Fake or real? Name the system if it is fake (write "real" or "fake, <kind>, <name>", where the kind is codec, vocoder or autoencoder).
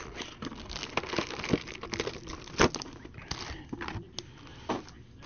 real